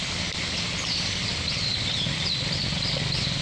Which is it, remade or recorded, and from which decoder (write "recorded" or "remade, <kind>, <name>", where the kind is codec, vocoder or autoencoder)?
recorded